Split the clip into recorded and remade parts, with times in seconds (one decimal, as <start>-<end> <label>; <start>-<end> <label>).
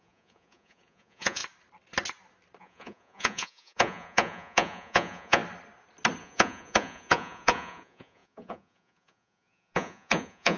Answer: 0.0-1.4 remade; 1.4-2.6 recorded; 2.6-5.4 remade; 5.4-6.2 recorded; 6.2-10.6 remade